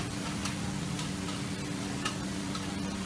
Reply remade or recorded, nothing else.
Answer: recorded